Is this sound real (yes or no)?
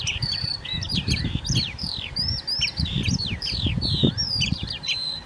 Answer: no